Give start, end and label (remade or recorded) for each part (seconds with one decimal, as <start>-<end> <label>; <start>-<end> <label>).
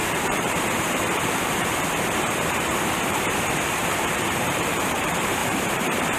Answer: 0.0-6.2 remade